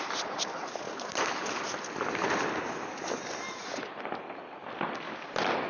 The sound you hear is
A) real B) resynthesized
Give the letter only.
A